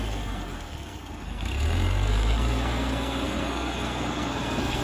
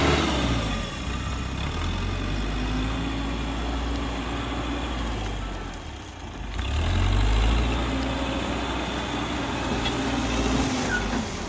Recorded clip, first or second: second